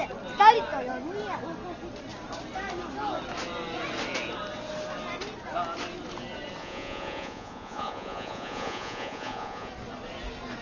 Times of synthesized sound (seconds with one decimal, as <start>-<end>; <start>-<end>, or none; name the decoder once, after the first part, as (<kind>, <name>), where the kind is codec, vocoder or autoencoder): 6.6-9.7 (vocoder, Vocos)